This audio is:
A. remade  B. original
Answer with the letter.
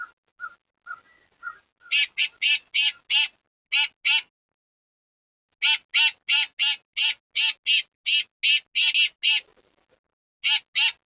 B